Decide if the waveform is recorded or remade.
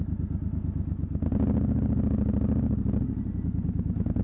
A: recorded